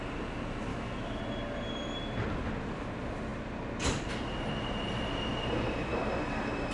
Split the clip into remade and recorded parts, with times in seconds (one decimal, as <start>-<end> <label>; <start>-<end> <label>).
0.0-0.7 recorded; 0.7-1.2 remade; 1.2-6.7 recorded